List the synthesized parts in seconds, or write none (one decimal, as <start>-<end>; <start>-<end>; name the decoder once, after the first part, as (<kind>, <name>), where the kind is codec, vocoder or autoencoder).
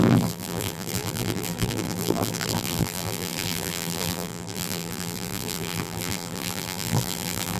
0.0-7.6 (vocoder, BigVGAN v2)